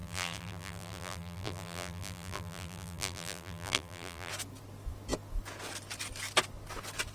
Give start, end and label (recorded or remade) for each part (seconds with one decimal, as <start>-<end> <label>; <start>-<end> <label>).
0.0-4.3 remade; 4.3-7.1 recorded